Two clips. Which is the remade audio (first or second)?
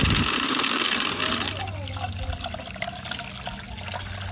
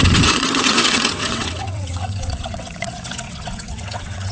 second